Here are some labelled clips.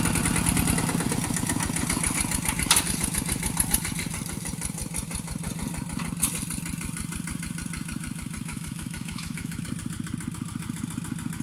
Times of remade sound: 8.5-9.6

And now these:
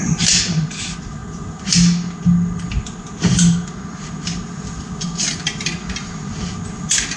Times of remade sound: none